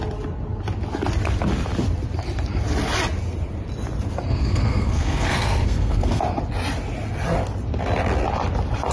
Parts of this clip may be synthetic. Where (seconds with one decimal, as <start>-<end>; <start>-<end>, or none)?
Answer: 4.3-6.2